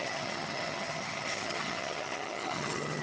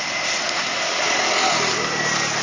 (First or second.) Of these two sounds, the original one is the second